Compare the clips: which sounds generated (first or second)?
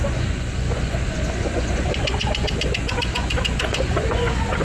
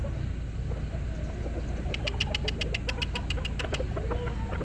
first